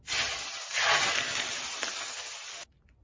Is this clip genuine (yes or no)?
yes